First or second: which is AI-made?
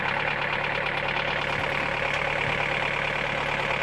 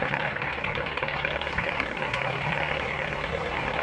second